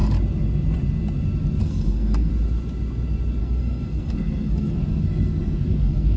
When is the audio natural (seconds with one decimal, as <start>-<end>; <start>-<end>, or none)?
0.0-1.6; 2.3-3.4